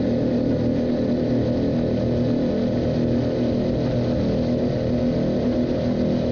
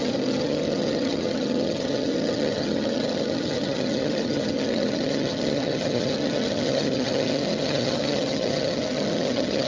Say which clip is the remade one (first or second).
second